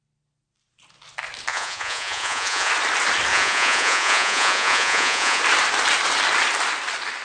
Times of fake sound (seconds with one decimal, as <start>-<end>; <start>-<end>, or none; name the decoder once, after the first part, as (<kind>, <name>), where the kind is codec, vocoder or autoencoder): 1.5-2.7 (vocoder, Vocos); 3.3-5.4